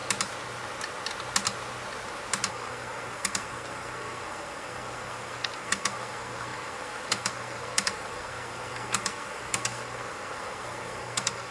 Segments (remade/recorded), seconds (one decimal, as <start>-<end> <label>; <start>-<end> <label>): 0.0-2.5 recorded; 2.5-11.5 remade